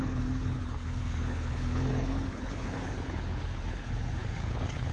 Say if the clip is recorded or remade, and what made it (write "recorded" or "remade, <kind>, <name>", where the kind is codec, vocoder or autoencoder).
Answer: remade, codec, HILCodec